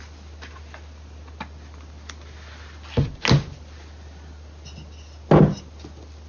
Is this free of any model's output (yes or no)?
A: yes